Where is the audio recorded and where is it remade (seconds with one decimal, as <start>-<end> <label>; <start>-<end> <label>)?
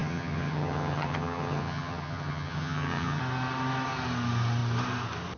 0.0-3.2 remade; 3.2-5.4 recorded